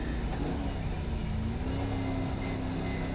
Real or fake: real